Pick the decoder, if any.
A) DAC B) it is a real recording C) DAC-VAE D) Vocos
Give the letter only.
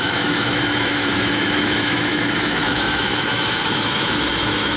C